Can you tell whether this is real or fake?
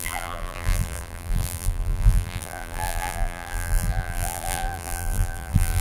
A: fake